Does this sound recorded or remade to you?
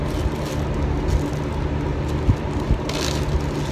recorded